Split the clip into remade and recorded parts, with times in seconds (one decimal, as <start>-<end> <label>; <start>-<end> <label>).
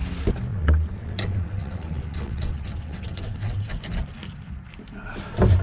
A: 0.0-0.5 recorded; 0.5-3.7 remade; 3.7-5.6 recorded